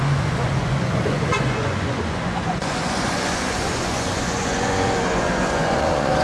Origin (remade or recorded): remade